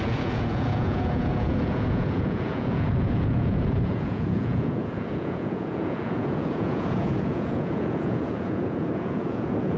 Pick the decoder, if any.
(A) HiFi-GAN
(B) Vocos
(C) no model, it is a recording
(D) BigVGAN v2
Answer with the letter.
B